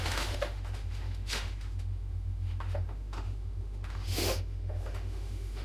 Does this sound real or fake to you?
fake